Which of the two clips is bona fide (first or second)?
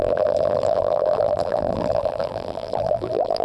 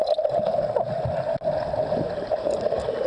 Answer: second